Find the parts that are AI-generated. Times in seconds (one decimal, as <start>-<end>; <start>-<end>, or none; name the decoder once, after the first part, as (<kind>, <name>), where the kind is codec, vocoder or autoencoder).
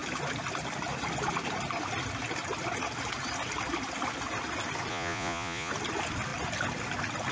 4.9-5.7 (vocoder, Vocos)